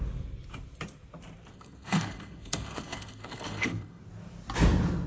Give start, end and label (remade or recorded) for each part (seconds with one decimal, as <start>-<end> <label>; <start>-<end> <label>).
0.0-1.5 recorded; 1.5-4.0 remade; 4.0-5.1 recorded